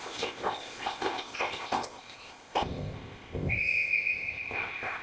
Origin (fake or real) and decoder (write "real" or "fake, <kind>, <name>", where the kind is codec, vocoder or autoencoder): fake, codec, ZipCodec